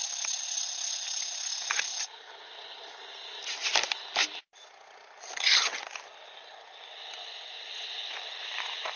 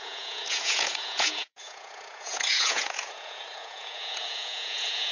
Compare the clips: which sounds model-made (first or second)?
second